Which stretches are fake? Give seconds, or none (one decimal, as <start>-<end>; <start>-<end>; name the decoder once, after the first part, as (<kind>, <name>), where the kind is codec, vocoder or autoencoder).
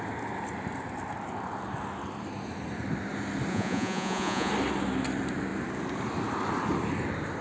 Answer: 3.5-4.5 (vocoder, Vocos)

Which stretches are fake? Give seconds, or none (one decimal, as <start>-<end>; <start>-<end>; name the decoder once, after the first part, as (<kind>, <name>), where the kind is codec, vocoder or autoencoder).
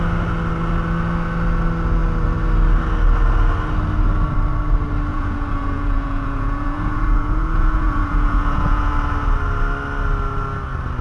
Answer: 5.1-8.9 (vocoder, Vocos)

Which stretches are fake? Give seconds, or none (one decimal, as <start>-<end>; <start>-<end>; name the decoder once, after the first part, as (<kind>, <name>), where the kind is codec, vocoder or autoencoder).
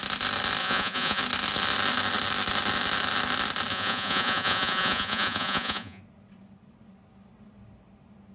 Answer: 0.6-1.2 (vocoder, Vocos); 3.7-6.0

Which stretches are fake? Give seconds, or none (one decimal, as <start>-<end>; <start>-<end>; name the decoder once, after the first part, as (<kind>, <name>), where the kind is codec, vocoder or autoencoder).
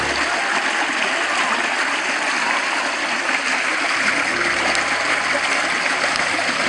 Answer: none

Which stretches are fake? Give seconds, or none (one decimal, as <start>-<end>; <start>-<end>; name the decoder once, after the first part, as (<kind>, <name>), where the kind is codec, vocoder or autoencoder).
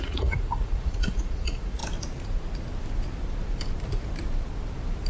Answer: 0.0-1.8 (vocoder, Vocos)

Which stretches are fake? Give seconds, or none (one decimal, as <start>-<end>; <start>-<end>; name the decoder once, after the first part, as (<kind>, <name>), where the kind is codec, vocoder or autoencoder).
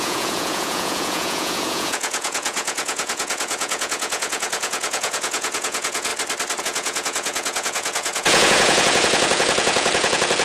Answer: 0.0-6.1 (vocoder, Vocos); 6.6-10.4